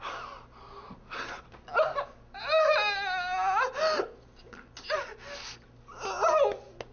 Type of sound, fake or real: real